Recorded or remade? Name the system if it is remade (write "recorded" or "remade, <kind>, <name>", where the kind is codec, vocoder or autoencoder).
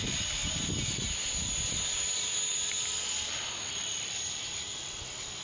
recorded